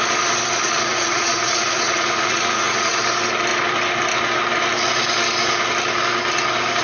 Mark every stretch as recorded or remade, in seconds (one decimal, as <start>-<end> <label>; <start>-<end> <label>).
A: 0.0-0.6 recorded; 0.6-3.0 remade; 3.0-6.8 recorded